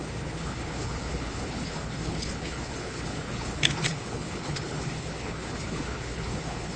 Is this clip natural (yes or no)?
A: no